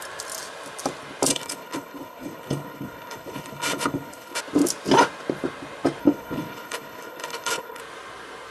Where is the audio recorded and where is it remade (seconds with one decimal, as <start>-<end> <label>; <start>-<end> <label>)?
0.0-1.3 recorded; 1.3-4.4 remade; 4.4-6.0 recorded; 6.0-7.8 remade; 7.8-8.5 recorded